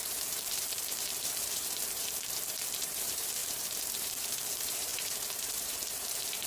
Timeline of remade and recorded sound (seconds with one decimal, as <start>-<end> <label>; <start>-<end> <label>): 0.0-6.5 remade